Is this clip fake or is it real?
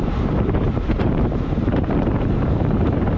fake